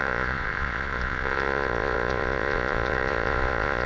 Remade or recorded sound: remade